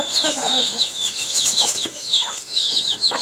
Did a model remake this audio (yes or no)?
yes